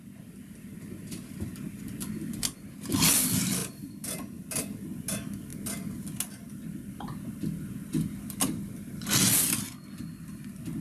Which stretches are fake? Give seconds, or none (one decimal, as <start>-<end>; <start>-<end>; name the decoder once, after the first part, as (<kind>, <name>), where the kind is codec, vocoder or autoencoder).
none

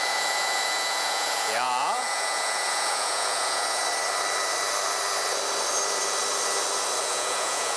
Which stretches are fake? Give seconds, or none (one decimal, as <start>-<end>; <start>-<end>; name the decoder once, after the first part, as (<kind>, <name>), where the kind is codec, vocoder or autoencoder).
0.0-3.8 (vocoder, Vocos); 7.0-7.8

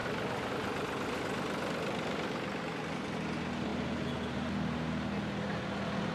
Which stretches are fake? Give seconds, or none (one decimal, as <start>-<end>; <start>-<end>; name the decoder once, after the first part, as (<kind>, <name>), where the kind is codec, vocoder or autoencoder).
none